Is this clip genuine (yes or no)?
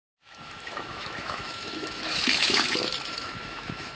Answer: no